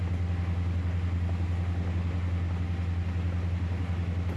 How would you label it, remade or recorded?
recorded